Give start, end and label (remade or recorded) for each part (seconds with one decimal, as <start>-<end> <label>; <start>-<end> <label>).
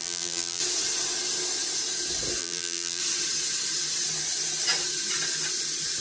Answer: 0.0-0.6 remade; 0.6-2.4 recorded; 2.4-3.0 remade; 3.0-6.0 recorded